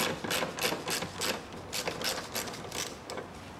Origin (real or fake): real